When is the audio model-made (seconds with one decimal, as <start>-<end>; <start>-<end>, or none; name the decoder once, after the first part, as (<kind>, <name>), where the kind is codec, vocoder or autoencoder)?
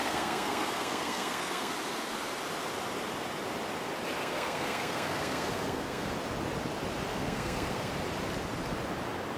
0.0-1.7 (codec, SNAC); 4.2-6.1; 7.1-7.9